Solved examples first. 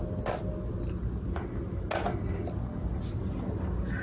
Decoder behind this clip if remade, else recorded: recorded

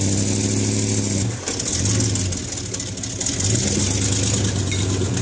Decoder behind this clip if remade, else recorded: recorded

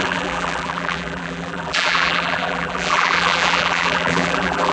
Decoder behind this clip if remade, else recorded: remade, vocoder, BigVGAN v2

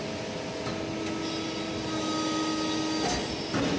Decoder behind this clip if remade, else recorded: recorded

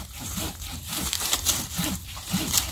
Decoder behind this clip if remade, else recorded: remade, vocoder, BigVGAN v2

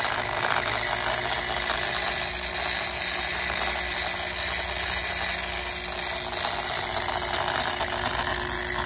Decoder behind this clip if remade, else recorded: recorded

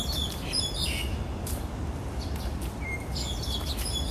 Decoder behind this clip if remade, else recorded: remade, vocoder, BigVGAN v2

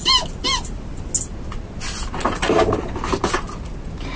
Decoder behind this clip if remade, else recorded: recorded